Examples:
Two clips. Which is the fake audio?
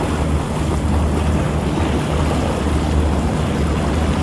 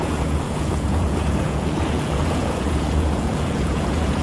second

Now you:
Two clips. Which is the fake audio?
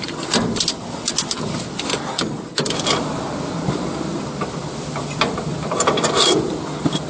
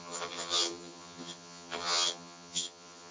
second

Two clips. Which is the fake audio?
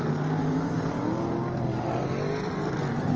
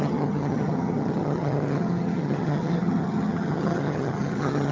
second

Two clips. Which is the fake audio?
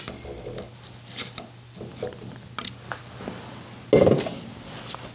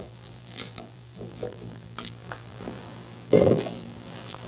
second